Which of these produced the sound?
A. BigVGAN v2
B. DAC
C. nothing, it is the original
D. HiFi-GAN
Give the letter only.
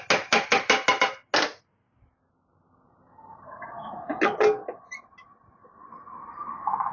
C